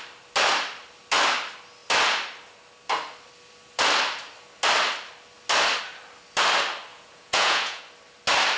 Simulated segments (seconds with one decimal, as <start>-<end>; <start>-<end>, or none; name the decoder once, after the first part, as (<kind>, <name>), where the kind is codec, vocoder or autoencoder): 6.9-7.8 (vocoder, Vocos)